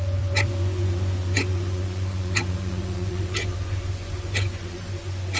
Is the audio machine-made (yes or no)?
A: yes